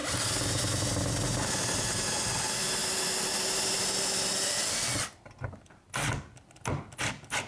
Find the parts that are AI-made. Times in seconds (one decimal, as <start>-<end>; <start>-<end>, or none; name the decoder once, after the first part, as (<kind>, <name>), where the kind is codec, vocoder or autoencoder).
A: none